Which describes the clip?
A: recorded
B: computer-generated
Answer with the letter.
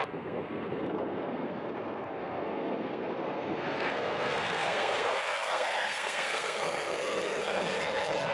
B